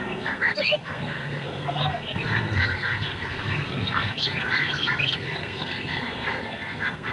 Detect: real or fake fake